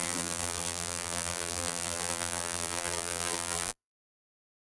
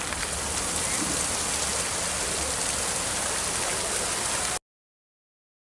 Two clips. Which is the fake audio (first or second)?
first